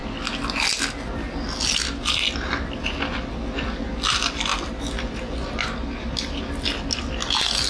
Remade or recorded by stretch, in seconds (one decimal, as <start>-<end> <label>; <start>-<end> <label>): 0.0-7.7 recorded